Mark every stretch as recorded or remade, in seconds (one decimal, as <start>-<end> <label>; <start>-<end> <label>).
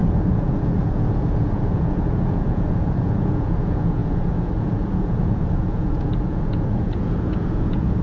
0.0-8.0 remade